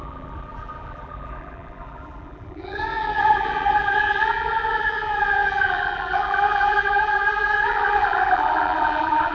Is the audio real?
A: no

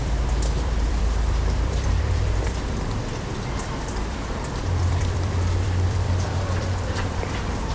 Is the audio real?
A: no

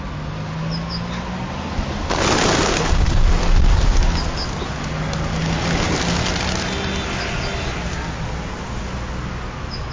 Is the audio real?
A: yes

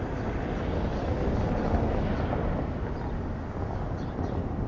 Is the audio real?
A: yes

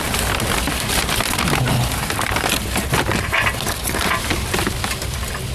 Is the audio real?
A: yes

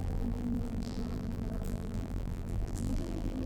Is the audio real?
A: no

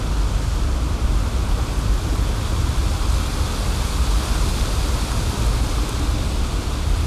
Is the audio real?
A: yes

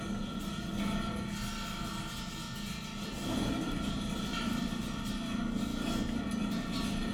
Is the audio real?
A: yes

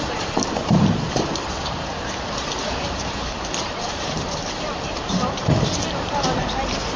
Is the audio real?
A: no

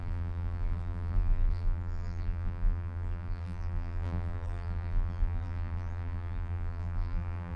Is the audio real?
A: no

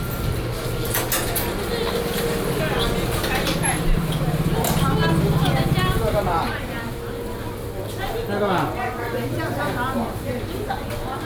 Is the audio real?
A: yes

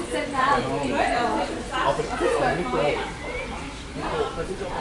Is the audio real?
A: yes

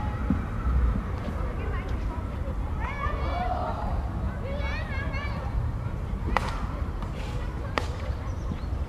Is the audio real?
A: no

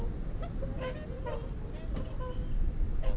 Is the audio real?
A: yes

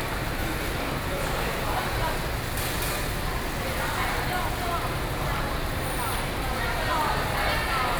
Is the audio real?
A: yes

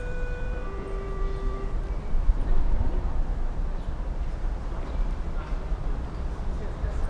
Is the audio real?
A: no